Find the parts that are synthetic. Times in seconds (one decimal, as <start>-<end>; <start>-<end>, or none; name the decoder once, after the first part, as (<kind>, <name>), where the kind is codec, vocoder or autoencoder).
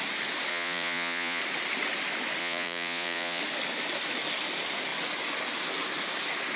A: 0.5-1.4 (vocoder, Vocos); 2.4-3.4